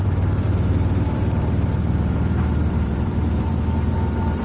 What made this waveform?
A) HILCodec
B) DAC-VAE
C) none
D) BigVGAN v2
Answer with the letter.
D